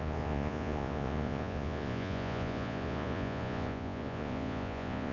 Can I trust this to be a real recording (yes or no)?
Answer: no